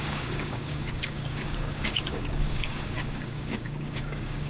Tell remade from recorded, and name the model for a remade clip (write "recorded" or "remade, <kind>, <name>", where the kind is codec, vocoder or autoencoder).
remade, codec, DAC